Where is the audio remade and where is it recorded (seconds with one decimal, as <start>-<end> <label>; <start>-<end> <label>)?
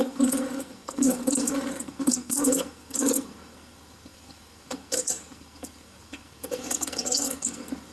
0.0-7.9 remade